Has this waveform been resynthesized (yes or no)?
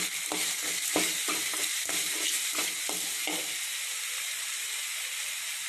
no